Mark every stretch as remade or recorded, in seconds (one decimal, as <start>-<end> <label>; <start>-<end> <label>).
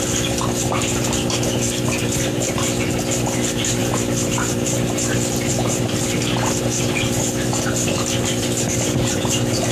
0.0-9.7 recorded